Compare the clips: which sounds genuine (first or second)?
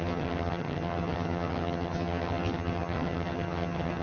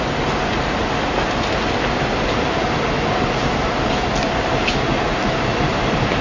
second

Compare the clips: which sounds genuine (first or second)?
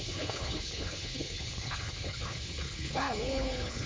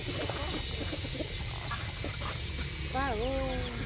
second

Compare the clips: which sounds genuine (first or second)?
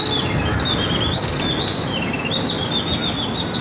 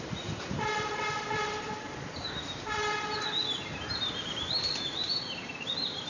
first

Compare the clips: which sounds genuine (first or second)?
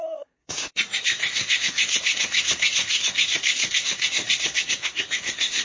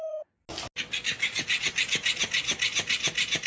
second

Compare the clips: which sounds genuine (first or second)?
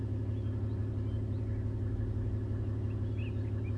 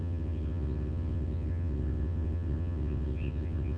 first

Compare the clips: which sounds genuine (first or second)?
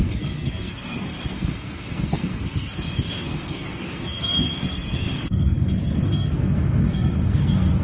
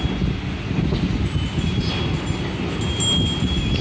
second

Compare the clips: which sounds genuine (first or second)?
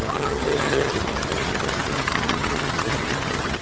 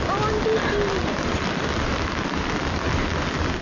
second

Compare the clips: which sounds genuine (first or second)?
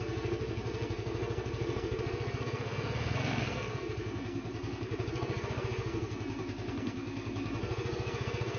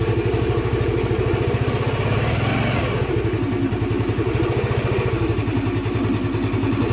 second